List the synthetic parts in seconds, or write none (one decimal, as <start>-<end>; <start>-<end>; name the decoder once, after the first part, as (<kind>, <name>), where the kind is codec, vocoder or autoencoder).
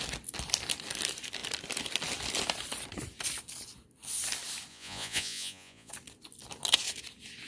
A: 4.7-5.9 (vocoder, Vocos)